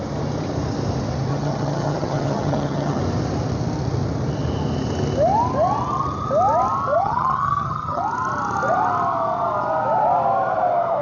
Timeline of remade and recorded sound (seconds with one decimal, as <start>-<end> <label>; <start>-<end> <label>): 0.0-1.3 recorded; 1.3-3.0 remade; 3.0-7.0 recorded; 7.0-8.0 remade; 8.0-11.0 recorded